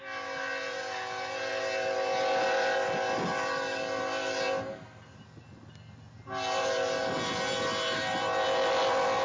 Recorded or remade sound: recorded